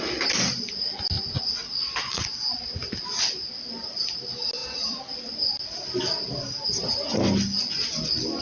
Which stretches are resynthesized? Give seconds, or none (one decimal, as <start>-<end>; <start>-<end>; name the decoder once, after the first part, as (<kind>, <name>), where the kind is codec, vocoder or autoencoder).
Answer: none